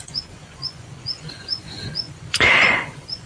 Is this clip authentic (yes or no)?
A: no